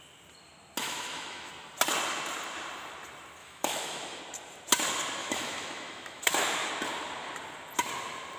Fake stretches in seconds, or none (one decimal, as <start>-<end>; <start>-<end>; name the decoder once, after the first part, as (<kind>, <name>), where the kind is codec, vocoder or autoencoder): 0.8-1.5 (autoencoder, DAC-VAE); 3.4-4.2; 5.2-6.7